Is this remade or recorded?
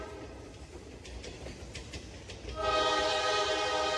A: recorded